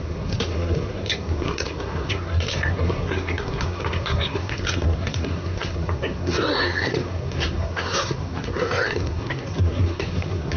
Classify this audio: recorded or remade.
remade